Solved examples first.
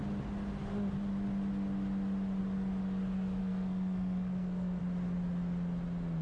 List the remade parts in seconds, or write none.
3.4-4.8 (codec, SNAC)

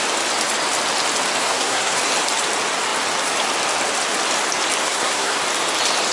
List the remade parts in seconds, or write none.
1.4-2.0 (codec, SNAC); 4.8-5.4